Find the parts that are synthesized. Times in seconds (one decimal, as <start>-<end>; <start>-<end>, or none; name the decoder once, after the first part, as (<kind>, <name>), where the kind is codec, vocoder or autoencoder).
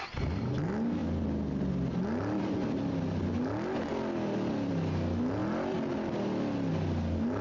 none